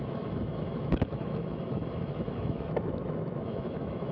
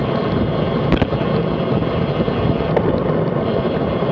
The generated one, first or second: first